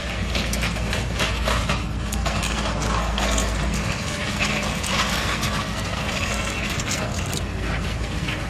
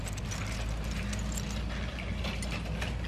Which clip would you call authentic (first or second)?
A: second